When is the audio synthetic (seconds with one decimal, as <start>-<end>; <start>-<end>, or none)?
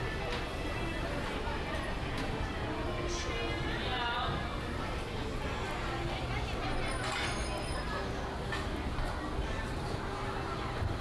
none